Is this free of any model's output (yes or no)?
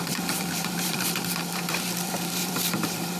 no